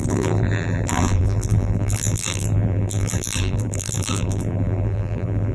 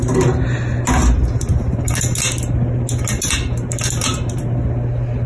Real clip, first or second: second